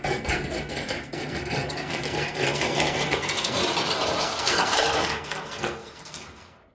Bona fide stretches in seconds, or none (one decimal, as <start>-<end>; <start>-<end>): 3.6-4.2